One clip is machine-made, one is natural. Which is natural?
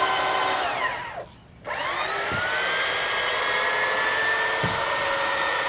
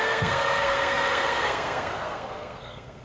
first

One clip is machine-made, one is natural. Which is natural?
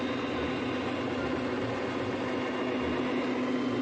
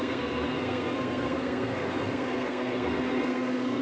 first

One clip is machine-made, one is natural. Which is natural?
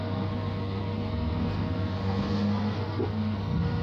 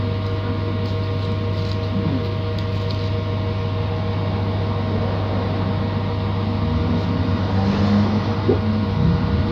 second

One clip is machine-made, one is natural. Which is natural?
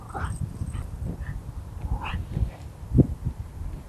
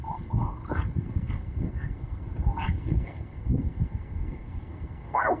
first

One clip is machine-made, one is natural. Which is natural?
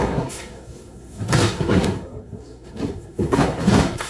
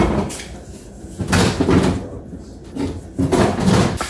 second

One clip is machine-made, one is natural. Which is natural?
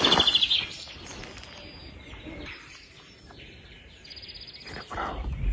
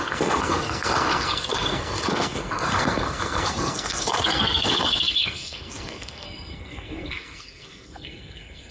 first